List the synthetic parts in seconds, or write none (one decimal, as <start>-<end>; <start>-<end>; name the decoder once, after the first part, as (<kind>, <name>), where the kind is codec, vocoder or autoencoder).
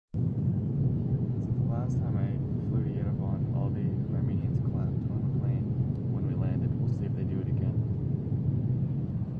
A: 0.0-1.5 (autoencoder, DAC-VAE)